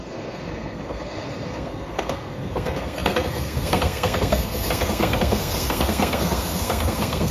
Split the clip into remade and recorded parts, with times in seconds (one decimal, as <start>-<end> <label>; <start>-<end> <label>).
0.0-7.3 remade